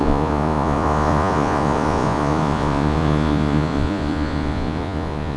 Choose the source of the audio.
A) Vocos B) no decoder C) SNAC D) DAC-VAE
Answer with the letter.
A